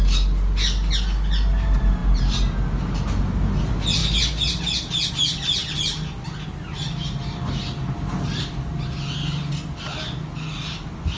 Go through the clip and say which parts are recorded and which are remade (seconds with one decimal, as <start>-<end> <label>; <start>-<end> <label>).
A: 0.0-11.2 recorded